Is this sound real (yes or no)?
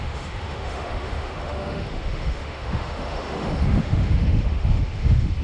no